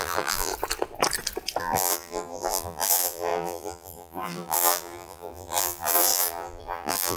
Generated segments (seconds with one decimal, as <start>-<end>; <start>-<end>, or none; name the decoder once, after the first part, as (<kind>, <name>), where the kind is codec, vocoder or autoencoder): 0.0-0.5 (vocoder, BigVGAN v2); 1.6-7.2